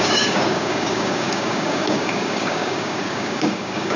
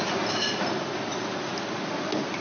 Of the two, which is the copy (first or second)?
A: first